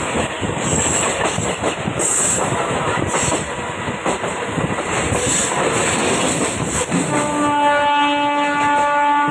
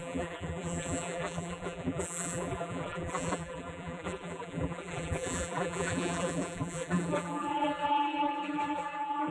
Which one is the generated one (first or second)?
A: second